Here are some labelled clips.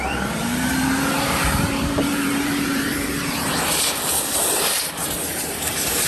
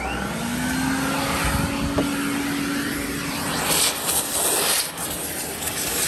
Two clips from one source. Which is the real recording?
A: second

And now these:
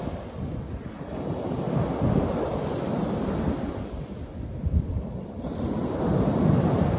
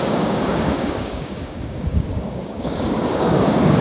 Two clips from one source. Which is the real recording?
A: first